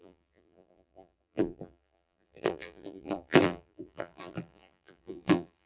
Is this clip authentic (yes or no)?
no